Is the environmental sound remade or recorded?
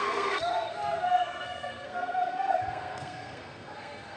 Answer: remade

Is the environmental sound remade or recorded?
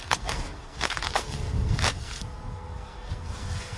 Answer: remade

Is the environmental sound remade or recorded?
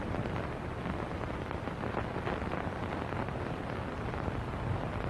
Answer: recorded